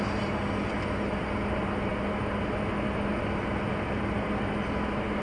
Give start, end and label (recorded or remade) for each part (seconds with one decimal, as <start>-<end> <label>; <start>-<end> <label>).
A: 0.0-5.2 recorded